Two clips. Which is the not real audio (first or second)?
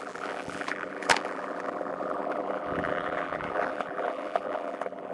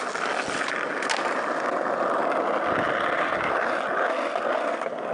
first